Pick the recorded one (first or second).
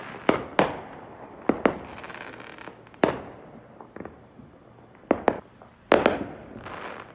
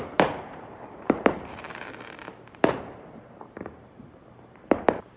first